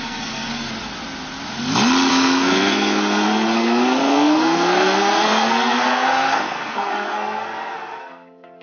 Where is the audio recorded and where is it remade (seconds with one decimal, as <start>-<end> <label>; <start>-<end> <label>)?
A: 0.0-0.7 remade; 0.7-2.1 recorded; 2.1-8.6 remade

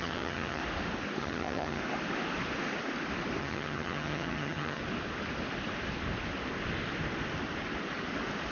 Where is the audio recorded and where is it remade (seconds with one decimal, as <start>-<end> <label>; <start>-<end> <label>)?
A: 0.0-0.6 remade; 0.6-1.2 recorded; 1.2-1.8 remade; 1.8-3.4 recorded; 3.4-4.8 remade; 4.8-8.5 recorded

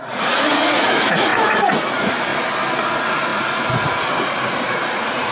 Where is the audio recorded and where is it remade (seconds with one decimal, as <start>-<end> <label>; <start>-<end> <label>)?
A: 0.0-2.3 remade; 2.3-2.8 recorded; 2.8-5.3 remade

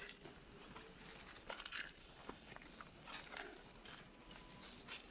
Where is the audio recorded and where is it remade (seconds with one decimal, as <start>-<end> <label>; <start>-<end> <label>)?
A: 0.0-2.0 recorded; 2.0-2.5 remade; 2.5-5.1 recorded

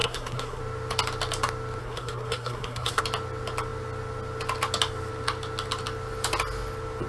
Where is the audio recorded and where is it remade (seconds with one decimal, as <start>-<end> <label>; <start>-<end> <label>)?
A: 0.0-0.6 remade; 0.6-1.8 recorded; 1.8-3.0 remade; 3.0-7.1 recorded